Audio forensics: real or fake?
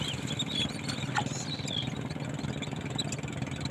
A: real